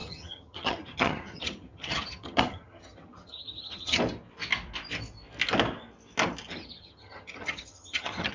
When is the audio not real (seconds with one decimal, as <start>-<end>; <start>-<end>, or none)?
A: 0.0-4.0; 6.5-8.3